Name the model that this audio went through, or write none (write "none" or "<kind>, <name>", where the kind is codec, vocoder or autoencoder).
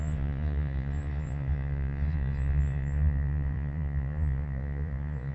vocoder, Vocos